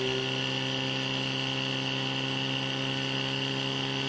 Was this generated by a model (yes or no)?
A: no